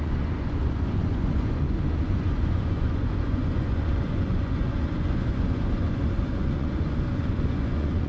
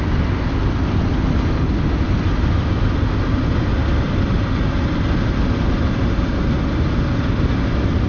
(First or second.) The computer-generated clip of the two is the first